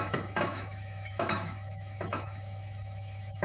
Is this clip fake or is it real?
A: fake